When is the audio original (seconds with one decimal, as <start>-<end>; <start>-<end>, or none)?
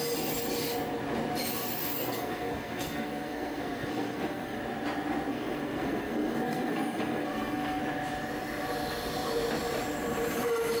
0.0-1.8; 4.6-5.3; 7.8-10.8